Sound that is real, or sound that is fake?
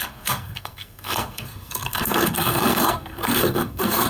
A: fake